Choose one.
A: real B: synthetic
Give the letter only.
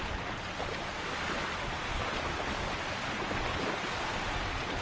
A